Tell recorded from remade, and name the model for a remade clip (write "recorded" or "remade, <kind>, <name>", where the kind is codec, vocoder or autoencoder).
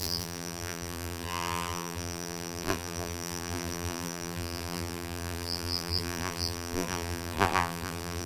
remade, vocoder, BigVGAN v2